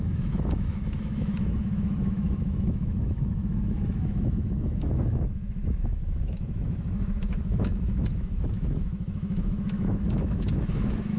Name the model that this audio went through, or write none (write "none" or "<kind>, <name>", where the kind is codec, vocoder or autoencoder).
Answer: autoencoder, DAC-VAE